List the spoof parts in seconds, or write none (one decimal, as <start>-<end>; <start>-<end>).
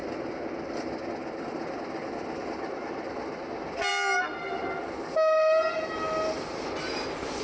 none